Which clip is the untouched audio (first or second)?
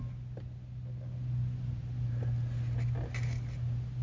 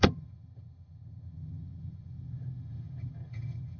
first